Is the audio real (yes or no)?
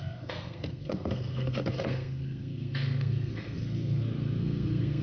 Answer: no